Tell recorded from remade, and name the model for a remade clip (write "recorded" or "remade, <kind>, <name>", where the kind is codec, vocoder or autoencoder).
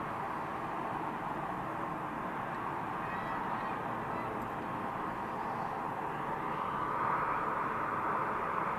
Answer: recorded